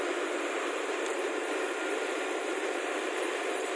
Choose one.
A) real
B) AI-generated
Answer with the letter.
B